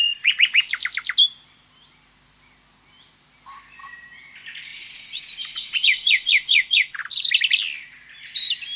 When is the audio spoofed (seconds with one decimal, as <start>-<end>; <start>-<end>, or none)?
0.0-0.7; 4.7-7.0